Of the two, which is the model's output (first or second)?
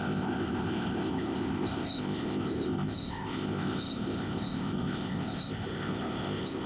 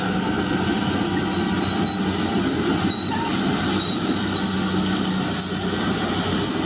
first